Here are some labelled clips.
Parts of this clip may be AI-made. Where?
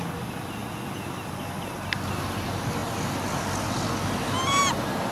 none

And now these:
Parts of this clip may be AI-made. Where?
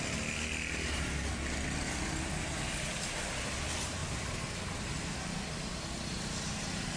none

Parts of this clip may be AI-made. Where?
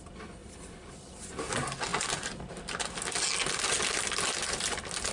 0.4-1.4 (vocoder, BigVGAN v2)